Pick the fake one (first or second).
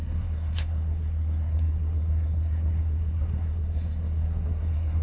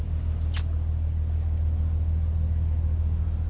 first